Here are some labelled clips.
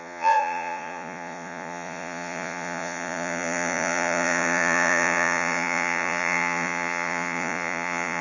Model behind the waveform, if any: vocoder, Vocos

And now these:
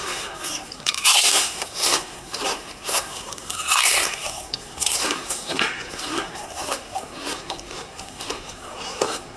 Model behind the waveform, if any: codec, SNAC